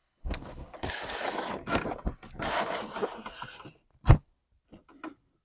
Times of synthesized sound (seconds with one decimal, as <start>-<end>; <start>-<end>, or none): 0.0-0.9